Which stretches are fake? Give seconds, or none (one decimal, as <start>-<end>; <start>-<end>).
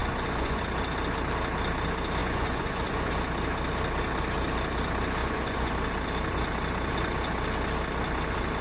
0.0-0.6; 2.2-3.1; 5.2-5.7